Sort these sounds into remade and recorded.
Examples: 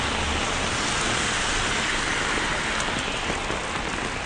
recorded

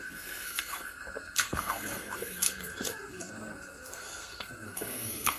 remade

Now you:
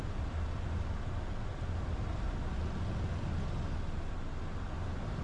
recorded